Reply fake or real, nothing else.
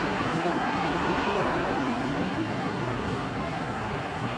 fake